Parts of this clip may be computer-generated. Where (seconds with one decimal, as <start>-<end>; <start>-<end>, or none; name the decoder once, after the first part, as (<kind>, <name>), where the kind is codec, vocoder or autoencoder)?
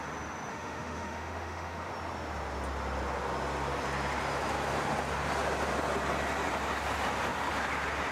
0.5-1.9 (autoencoder, DAC-VAE)